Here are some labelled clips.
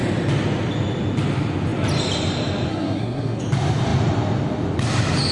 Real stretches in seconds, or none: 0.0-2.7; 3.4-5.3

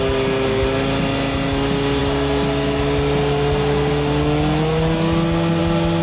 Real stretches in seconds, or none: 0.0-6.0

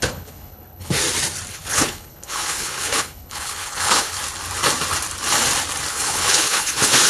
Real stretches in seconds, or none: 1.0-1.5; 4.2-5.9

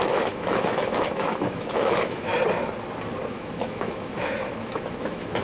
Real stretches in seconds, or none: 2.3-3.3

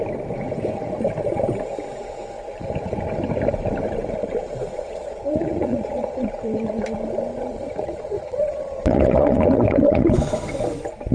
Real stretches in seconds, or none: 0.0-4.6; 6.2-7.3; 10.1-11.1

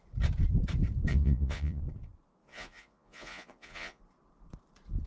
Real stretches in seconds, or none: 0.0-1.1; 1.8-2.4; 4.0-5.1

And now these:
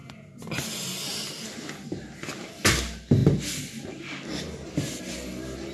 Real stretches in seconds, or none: 0.0-5.7